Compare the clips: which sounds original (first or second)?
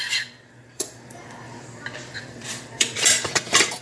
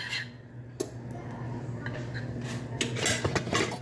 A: second